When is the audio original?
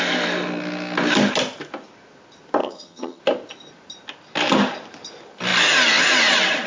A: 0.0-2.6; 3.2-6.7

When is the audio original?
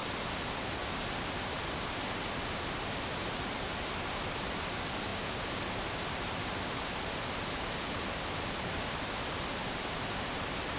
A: 0.0-10.8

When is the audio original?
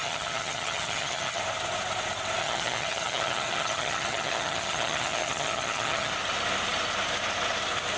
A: 1.4-2.4; 6.1-8.0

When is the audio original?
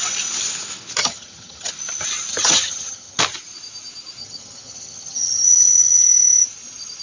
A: 0.0-1.0; 1.7-2.3; 3.2-4.2; 6.0-7.0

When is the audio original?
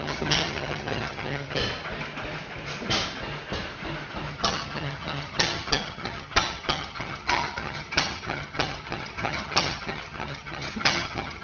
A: 1.6-4.3